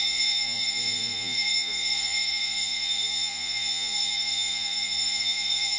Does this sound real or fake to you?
fake